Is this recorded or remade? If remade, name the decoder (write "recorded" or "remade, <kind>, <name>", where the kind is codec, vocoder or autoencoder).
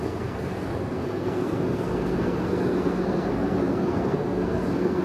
remade, codec, SNAC